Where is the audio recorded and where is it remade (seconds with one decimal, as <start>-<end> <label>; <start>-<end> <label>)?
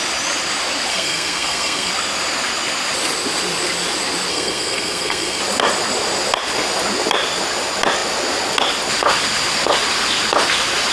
0.0-0.9 recorded; 0.9-1.9 remade; 1.9-4.3 recorded; 4.3-5.4 remade; 5.4-10.9 recorded